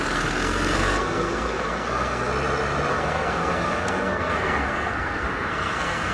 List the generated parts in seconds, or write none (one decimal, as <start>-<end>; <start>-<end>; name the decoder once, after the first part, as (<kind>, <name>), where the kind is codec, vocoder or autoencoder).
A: 0.0-2.3 (codec, SNAC); 2.9-6.1